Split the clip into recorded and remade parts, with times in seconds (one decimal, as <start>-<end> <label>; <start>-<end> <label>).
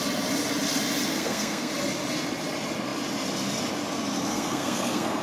0.0-1.1 recorded; 1.1-1.7 remade; 1.7-4.3 recorded; 4.3-5.2 remade